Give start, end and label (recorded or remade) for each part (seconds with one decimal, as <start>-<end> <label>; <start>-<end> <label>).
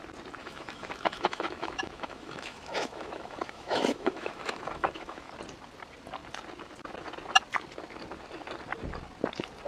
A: 0.0-0.4 recorded; 0.4-5.3 remade; 5.3-9.7 recorded